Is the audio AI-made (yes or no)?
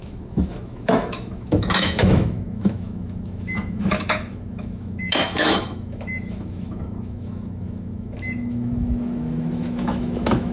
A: yes